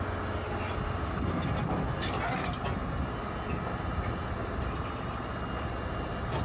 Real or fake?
real